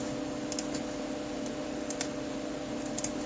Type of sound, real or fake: real